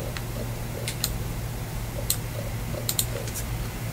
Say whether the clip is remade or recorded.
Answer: remade